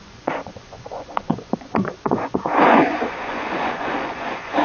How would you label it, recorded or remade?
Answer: remade